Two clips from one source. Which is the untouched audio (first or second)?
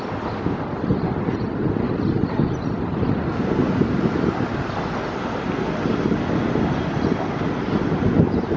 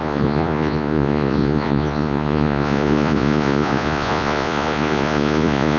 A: first